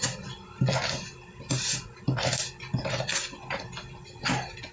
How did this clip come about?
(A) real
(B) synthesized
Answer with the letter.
A